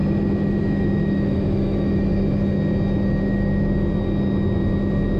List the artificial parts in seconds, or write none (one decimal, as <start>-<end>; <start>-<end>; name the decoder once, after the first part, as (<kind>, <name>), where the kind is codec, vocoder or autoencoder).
0.6-2.1 (autoencoder, DAC-VAE)